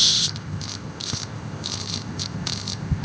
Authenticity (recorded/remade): remade